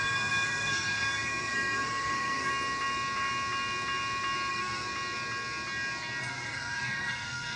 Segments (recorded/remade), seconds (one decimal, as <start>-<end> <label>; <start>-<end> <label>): 0.0-2.5 remade; 2.5-4.5 recorded; 4.5-4.9 remade; 4.9-6.2 recorded; 6.2-7.6 remade